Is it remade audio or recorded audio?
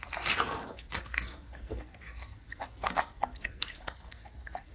remade